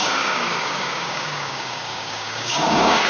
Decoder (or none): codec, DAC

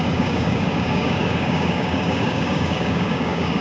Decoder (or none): codec, DAC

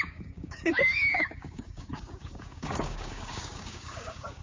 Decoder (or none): codec, DAC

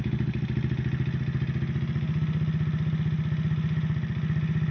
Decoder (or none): none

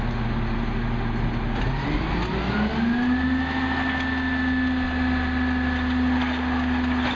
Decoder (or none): none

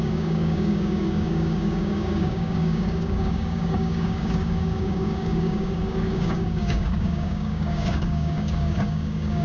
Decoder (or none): codec, DAC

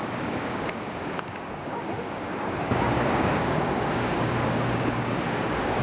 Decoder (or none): codec, DAC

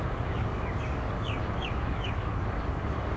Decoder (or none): codec, DAC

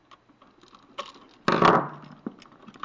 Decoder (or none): none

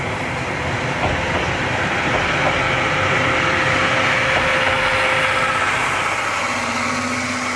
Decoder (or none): none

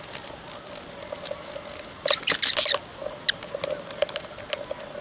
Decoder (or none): none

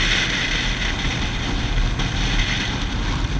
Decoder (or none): none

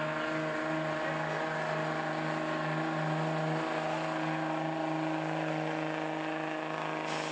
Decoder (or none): none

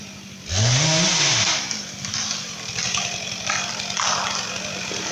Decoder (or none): none